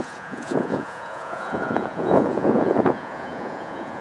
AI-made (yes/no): yes